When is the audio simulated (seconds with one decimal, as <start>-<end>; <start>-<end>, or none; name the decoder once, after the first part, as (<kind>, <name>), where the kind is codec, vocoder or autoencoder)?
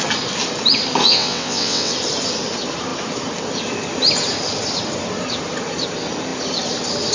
1.0-1.9 (vocoder, WaveNeXt)